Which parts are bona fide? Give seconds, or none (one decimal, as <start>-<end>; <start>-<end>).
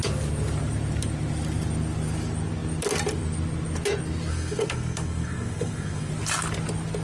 0.0-4.3; 6.1-7.0